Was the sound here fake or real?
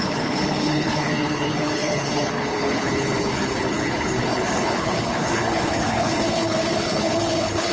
fake